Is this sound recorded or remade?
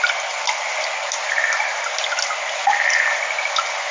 recorded